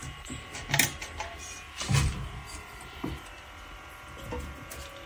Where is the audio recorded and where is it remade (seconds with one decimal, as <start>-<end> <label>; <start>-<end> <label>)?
0.0-5.1 recorded